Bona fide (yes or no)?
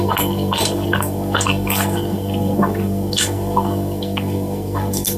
no